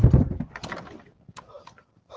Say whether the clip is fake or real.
real